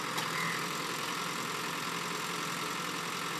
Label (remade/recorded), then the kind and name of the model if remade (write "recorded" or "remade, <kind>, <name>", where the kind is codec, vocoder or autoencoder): recorded